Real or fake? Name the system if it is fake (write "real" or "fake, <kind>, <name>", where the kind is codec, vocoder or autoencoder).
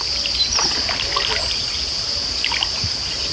real